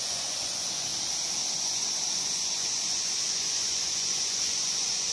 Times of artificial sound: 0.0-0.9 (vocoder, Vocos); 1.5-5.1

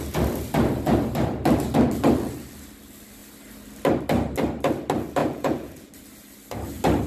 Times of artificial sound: 5.2-5.9 (vocoder, Vocos)

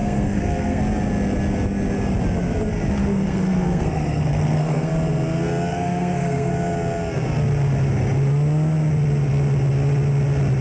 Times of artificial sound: 0.0-0.8 (codec, SNAC); 3.0-4.9; 5.7-6.5

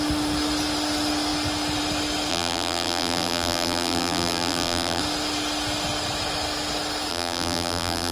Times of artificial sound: 2.3-5.0 (vocoder, BigVGAN v2); 7.1-8.1

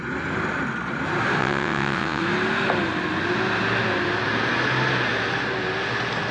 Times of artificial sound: 1.4-2.2 (vocoder, WaveNeXt)